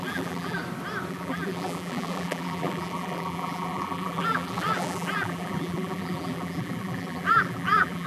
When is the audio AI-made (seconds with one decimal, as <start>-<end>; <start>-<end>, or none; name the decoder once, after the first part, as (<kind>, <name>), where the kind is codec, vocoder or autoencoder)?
0.0-0.6 (vocoder, BigVGAN v2); 1.1-8.1